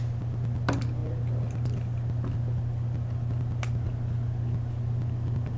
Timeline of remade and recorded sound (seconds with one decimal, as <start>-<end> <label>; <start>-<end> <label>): 0.0-5.6 recorded